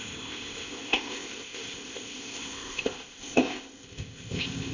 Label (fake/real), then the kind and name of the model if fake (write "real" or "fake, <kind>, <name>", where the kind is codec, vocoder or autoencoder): fake, codec, ZipCodec